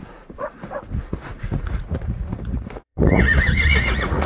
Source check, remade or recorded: remade